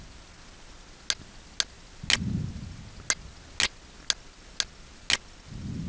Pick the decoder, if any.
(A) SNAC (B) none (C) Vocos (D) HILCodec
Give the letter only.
B